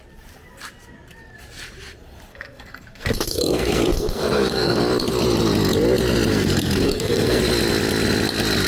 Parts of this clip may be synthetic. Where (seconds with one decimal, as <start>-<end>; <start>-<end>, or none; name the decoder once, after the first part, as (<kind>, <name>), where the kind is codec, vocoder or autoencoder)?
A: 2.3-4.8 (codec, SNAC); 6.3-7.4